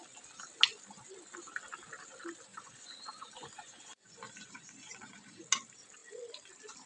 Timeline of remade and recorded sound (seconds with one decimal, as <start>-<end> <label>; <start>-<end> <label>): 0.0-2.5 recorded; 2.5-5.4 remade; 5.4-6.9 recorded